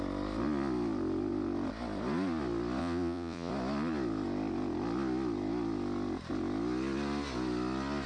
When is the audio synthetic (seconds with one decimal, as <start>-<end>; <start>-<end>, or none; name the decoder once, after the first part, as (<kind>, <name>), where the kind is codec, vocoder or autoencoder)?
2.8-3.5 (vocoder, Vocos)